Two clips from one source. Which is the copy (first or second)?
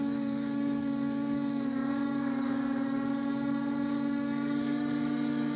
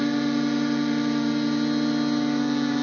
first